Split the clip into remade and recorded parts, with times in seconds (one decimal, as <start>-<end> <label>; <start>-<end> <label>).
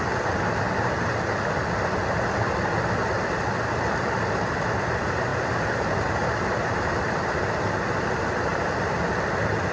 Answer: 0.0-5.3 recorded; 5.3-6.9 remade; 6.9-8.5 recorded; 8.5-9.1 remade; 9.1-9.7 recorded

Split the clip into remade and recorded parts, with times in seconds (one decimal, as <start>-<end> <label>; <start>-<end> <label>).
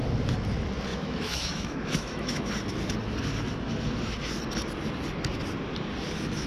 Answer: 0.0-0.9 recorded; 0.9-2.5 remade; 2.5-6.5 recorded